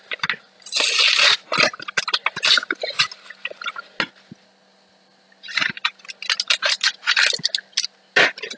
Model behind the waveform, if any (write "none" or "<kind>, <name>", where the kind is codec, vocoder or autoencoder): none